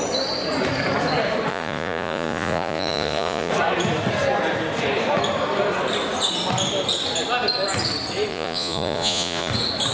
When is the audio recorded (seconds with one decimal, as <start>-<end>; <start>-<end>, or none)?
0.0-1.5; 3.5-8.3; 9.5-9.9

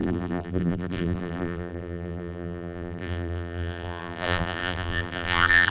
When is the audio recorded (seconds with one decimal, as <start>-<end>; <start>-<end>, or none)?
none

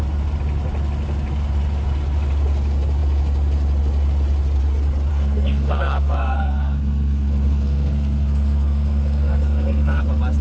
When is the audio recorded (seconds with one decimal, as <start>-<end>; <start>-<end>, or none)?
0.0-5.1; 10.0-10.4

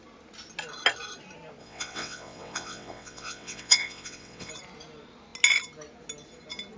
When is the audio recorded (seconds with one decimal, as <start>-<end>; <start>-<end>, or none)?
0.0-1.6; 4.5-6.8

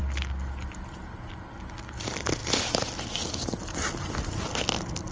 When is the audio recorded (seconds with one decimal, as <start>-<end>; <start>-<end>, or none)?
0.0-5.1

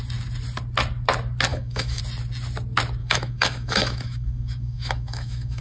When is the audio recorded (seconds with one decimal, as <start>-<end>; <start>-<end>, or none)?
0.0-1.5; 2.0-3.0

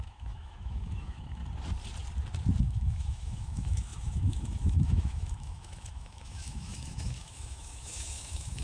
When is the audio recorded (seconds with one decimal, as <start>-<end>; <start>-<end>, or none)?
1.4-2.6